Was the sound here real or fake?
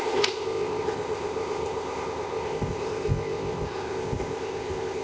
fake